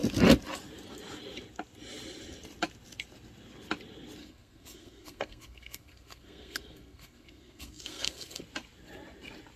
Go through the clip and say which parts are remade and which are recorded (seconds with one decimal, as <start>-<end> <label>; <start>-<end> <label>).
0.0-4.2 recorded; 4.2-8.4 remade; 8.4-9.6 recorded